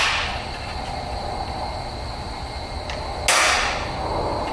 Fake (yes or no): no